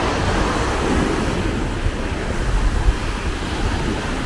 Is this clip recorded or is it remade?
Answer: recorded